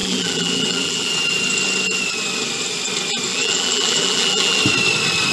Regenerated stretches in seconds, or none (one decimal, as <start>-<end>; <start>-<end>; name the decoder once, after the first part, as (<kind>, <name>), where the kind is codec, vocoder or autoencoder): 0.0-1.1 (vocoder, BigVGAN v2); 3.3-4.6

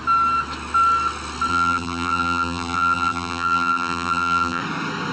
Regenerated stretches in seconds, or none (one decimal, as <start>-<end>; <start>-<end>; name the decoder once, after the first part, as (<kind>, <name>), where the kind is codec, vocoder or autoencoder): 1.5-4.6 (vocoder, BigVGAN v2)

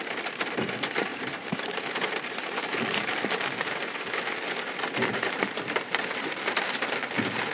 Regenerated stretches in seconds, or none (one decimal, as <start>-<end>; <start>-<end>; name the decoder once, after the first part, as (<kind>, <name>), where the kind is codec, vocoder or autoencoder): 1.1-4.2 (vocoder, BigVGAN v2); 5.1-5.8

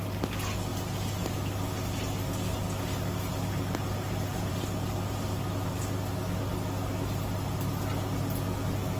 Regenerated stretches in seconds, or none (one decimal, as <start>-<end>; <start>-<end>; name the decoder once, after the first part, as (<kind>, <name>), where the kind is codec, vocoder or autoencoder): none

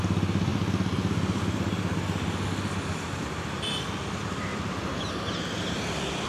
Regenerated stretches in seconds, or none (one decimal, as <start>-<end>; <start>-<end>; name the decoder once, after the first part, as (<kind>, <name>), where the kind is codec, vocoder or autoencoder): none

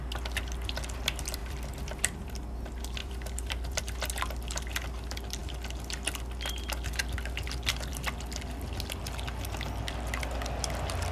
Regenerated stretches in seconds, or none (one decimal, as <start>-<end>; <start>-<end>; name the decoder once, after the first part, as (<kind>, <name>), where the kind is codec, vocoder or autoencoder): 1.4-2.3 (vocoder, BigVGAN v2); 3.0-3.8

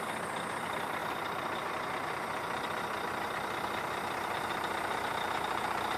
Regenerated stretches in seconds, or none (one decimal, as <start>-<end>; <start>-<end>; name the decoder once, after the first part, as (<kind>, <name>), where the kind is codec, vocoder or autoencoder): 0.0-6.0 (vocoder, BigVGAN v2)